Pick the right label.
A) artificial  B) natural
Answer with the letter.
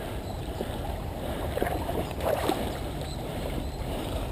A